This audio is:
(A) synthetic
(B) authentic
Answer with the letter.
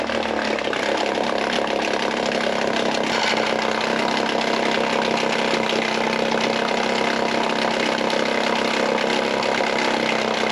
B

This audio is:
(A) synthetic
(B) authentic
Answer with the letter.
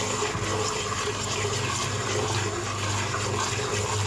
B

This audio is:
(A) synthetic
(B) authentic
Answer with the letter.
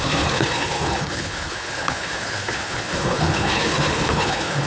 A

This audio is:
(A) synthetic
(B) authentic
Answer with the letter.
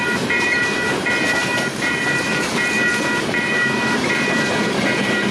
A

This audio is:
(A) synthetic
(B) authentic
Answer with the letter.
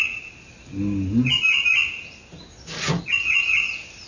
B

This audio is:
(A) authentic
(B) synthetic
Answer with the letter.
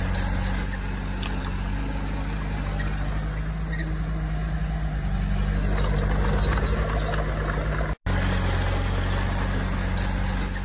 A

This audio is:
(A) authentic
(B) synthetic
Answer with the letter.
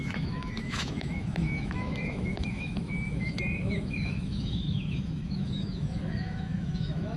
B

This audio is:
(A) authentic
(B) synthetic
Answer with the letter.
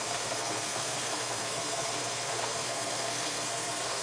B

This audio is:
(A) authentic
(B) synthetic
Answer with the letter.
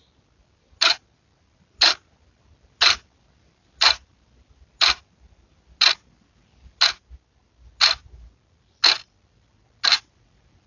A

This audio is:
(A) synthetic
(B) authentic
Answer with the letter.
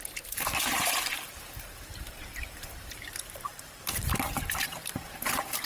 A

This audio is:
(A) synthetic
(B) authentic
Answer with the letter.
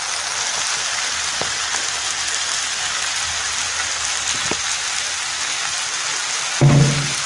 B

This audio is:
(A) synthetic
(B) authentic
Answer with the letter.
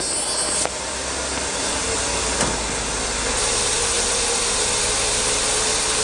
B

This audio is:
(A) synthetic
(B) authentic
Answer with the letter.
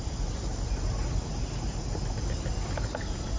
B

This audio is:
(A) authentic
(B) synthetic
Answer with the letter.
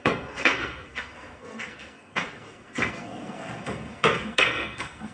B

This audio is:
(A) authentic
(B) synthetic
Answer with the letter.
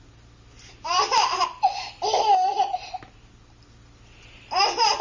A